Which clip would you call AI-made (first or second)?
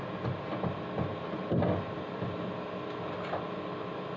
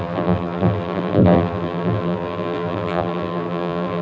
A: second